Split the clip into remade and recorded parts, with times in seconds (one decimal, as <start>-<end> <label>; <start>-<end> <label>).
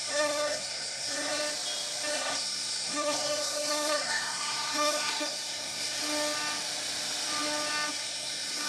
0.0-1.4 remade; 1.4-2.1 recorded; 2.1-6.0 remade; 6.0-7.9 recorded; 7.9-8.7 remade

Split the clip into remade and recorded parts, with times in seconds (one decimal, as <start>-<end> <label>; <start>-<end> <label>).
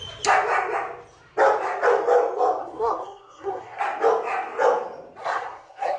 0.0-2.6 recorded; 2.6-3.8 remade; 3.8-5.2 recorded; 5.2-6.0 remade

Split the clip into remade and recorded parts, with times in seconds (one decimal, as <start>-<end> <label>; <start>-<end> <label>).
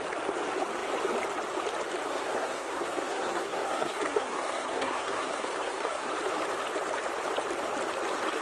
0.0-2.1 recorded; 2.1-6.1 remade; 6.1-8.4 recorded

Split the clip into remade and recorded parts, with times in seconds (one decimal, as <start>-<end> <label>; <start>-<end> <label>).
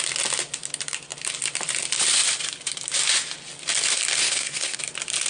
0.0-4.2 recorded; 4.2-4.8 remade; 4.8-5.3 recorded